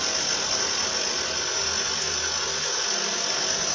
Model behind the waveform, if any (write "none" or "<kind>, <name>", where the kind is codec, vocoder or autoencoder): none